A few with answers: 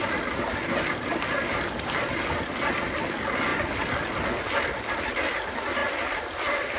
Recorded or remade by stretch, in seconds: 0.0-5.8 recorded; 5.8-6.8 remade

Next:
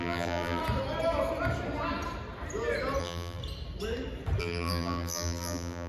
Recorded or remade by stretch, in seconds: 0.0-0.6 remade; 0.6-3.0 recorded; 3.0-3.4 remade; 3.4-4.4 recorded; 4.4-5.9 remade

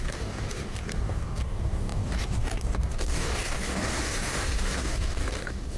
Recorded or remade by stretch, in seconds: 0.0-5.8 remade

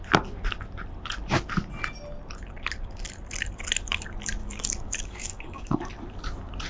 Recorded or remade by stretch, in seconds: 0.0-4.4 recorded; 4.4-5.9 remade; 5.9-6.7 recorded

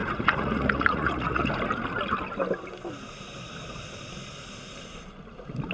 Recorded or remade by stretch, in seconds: 0.0-1.5 remade; 1.5-5.7 recorded

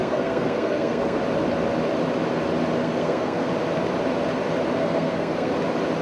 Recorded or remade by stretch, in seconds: 0.0-1.2 remade; 1.2-2.8 recorded; 2.8-3.5 remade; 3.5-4.8 recorded; 4.8-5.5 remade; 5.5-6.0 recorded